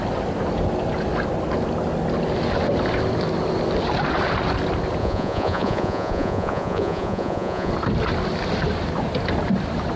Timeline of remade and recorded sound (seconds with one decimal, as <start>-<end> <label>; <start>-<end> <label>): 0.0-5.0 recorded; 5.0-7.7 remade; 7.7-10.0 recorded